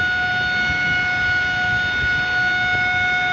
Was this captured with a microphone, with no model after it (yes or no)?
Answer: yes